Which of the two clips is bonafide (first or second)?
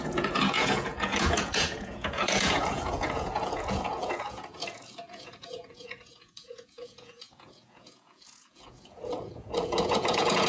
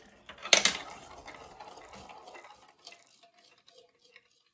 second